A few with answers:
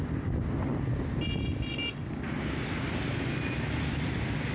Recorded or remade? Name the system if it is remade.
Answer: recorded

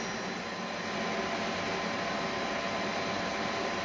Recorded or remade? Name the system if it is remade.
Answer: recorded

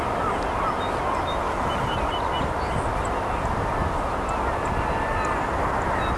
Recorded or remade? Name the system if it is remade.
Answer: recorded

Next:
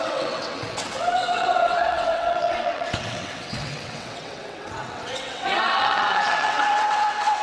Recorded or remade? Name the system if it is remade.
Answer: remade, vocoder, WaveNeXt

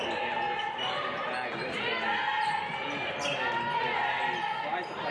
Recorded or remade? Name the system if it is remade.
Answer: recorded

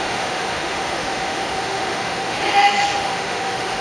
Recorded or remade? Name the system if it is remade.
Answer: remade, autoencoder, DAC-VAE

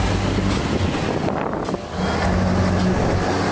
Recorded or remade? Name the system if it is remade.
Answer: recorded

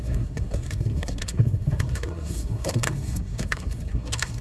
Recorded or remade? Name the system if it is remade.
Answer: remade, codec, SNAC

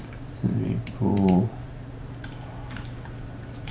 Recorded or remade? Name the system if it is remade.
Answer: remade, vocoder, BigVGAN v2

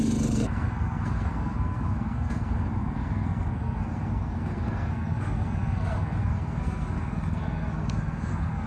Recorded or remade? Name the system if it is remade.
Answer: remade, codec, SNAC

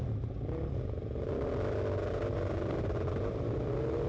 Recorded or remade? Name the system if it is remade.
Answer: recorded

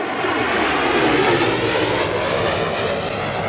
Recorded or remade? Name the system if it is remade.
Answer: recorded